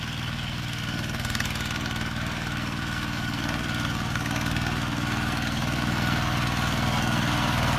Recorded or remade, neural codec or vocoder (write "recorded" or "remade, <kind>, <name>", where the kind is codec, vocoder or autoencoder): remade, codec, SNAC